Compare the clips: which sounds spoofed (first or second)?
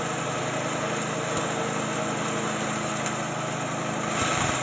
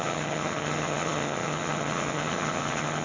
second